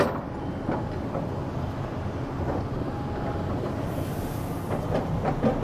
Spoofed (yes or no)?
no